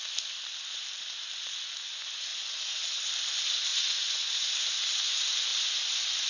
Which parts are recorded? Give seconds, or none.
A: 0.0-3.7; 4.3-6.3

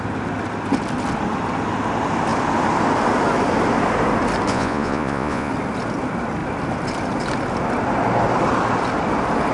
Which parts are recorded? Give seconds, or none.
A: 0.0-4.5; 5.5-9.5

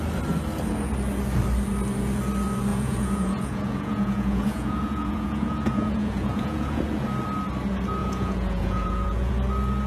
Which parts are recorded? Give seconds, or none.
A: 0.0-2.7; 6.8-8.0; 9.3-9.9

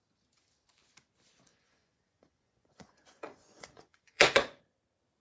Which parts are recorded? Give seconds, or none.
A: 0.0-1.5; 4.6-5.2

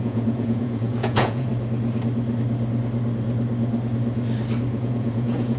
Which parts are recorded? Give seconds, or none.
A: 1.5-4.8

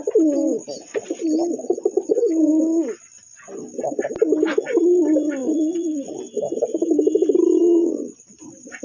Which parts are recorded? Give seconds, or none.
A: 0.0-5.4; 6.2-7.6; 8.4-8.8

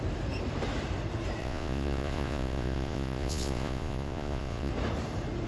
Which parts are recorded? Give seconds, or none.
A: 0.0-1.4; 4.7-5.5

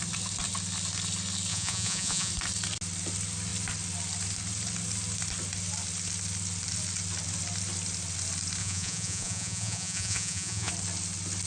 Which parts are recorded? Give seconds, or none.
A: 0.0-1.5; 2.3-8.6; 10.7-11.5